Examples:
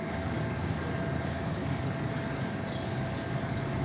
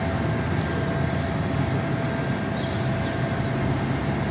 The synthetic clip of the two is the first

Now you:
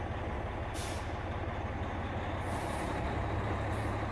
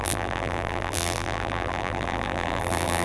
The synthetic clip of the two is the second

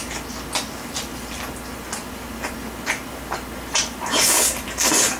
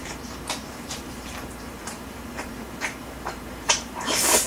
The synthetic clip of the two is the second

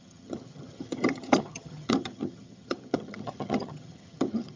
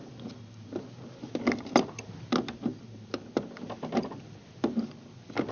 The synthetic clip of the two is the first